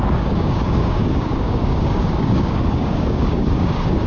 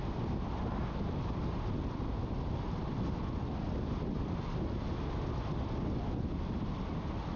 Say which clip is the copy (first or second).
first